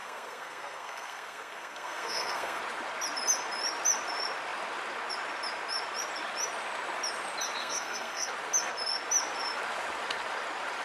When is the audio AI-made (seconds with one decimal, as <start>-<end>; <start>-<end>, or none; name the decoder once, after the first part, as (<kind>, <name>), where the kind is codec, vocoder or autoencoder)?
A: 0.0-2.6 (codec, SNAC); 7.6-8.3